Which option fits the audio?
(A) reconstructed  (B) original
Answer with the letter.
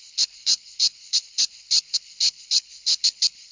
A